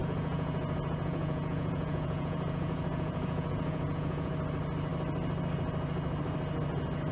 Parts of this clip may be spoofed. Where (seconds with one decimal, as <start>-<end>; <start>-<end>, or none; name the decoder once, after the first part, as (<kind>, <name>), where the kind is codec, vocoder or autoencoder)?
0.0-4.3 (vocoder, Vocos)